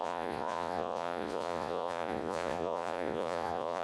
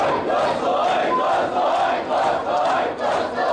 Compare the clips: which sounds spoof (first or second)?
first